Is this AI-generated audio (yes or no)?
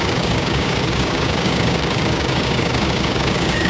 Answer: yes